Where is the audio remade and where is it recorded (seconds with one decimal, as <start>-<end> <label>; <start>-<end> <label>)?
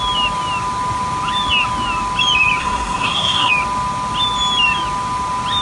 0.0-2.6 recorded; 2.6-3.5 remade; 3.5-5.6 recorded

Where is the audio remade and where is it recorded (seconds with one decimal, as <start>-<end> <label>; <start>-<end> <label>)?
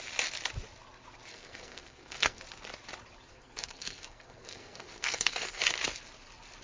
0.0-1.3 recorded; 1.3-2.4 remade; 2.4-3.3 recorded; 3.3-5.6 remade; 5.6-6.6 recorded